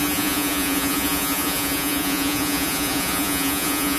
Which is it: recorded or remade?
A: remade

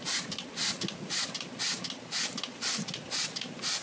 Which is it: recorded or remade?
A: recorded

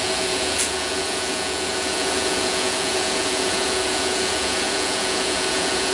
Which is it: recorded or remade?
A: remade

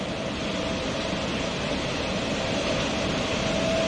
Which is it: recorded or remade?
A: recorded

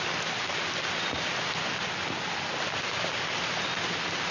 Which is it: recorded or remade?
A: recorded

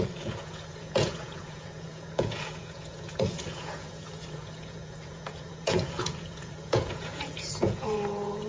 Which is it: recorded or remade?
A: remade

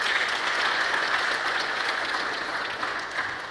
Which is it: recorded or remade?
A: remade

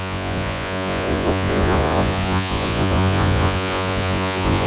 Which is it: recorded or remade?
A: remade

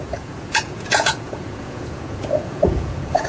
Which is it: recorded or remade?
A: remade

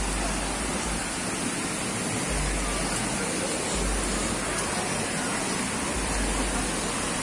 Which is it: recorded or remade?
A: recorded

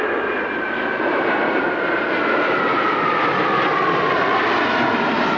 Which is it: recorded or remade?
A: recorded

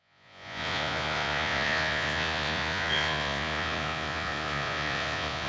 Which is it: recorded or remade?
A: remade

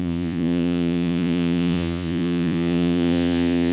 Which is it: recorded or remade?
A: remade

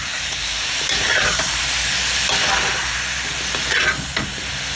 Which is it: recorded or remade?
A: recorded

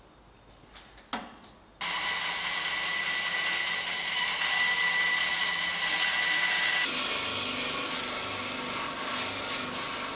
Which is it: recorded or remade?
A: recorded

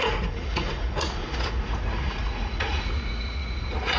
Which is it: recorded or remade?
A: remade